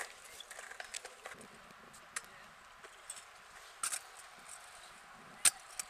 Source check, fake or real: real